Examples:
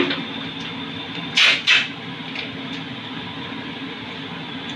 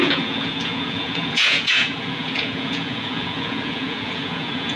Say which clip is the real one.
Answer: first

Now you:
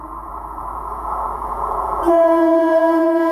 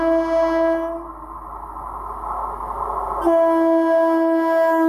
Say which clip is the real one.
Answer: second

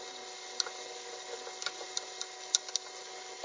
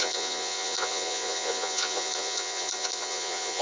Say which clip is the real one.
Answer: first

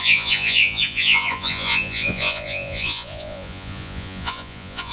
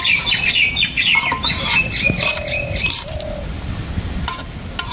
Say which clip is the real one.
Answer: second